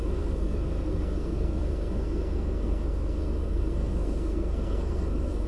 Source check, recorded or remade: remade